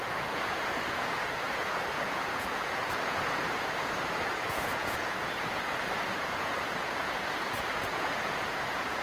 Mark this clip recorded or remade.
remade